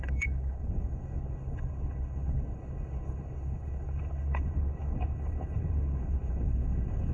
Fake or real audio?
fake